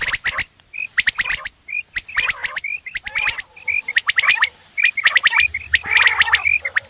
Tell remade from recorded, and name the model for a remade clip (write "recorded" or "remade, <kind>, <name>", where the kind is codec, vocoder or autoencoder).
recorded